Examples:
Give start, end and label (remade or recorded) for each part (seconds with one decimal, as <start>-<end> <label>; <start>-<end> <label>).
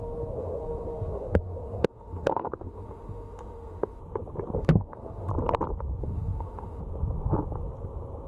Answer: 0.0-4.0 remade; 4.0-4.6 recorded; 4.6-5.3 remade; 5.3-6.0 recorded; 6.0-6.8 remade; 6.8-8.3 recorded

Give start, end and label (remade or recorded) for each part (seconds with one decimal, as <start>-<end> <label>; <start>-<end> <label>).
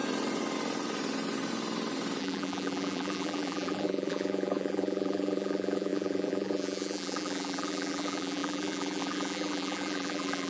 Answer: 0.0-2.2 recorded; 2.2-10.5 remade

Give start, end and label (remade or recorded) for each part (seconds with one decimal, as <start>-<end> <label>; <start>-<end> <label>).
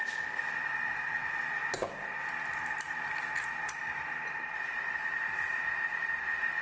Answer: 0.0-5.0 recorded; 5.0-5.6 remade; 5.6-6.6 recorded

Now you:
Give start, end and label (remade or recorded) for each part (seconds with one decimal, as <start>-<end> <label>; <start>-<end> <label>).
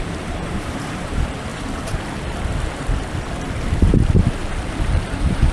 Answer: 0.0-1.5 remade; 1.5-4.8 recorded; 4.8-5.5 remade